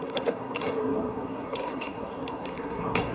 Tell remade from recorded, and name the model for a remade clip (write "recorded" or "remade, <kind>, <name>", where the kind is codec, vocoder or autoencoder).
remade, codec, SNAC